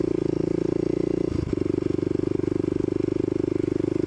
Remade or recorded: recorded